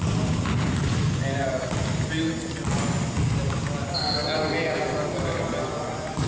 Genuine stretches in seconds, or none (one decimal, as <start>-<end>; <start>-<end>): 0.0-6.3